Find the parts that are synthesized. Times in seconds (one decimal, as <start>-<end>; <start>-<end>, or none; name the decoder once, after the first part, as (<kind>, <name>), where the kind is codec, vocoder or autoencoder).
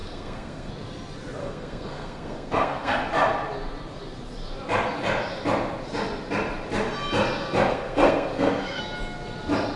0.0-0.7 (codec, SNAC); 1.4-3.1; 7.7-8.8